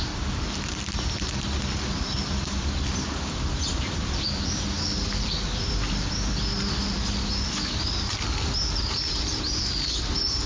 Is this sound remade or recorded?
remade